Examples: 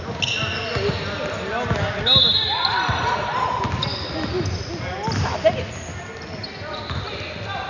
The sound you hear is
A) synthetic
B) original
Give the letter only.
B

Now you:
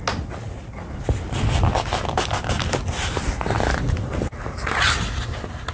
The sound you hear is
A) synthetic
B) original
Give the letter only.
B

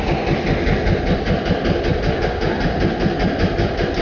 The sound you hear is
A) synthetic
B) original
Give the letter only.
B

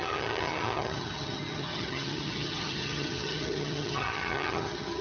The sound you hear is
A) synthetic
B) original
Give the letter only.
A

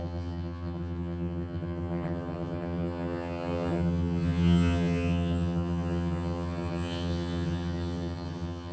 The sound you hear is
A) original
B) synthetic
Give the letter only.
B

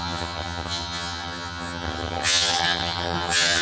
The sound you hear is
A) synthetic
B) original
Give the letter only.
A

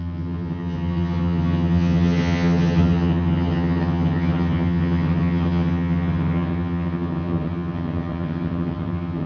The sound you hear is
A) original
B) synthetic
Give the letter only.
B